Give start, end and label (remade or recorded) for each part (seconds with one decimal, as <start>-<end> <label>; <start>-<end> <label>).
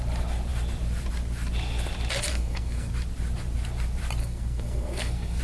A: 0.0-2.3 recorded; 2.3-2.9 remade; 2.9-4.2 recorded; 4.2-5.4 remade